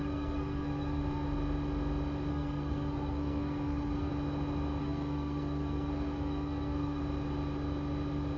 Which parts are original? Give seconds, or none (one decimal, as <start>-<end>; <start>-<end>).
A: 1.0-2.3; 4.1-4.8; 7.0-8.4